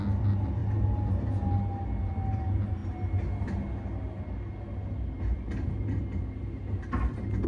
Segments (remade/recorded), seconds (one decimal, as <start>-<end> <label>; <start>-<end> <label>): 0.0-7.5 recorded